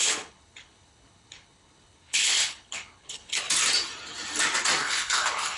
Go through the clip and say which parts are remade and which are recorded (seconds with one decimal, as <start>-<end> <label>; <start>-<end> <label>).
0.0-3.4 remade; 3.4-4.8 recorded; 4.8-5.6 remade